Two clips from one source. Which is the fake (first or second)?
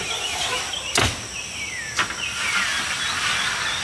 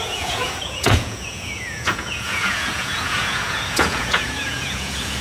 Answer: second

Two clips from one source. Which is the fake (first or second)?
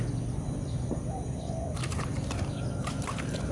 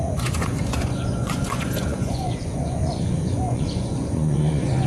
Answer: second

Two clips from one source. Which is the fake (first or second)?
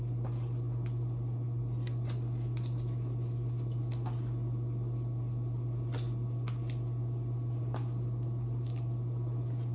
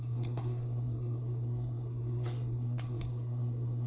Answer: second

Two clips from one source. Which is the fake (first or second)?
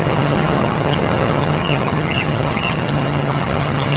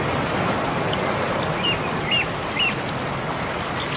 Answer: first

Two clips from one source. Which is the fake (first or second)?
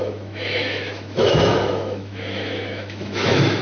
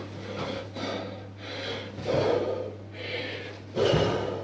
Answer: first